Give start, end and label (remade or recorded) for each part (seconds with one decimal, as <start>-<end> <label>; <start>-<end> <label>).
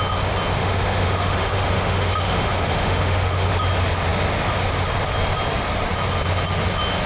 0.0-0.6 recorded; 0.6-3.5 remade; 3.5-7.1 recorded